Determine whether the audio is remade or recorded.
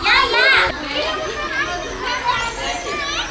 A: recorded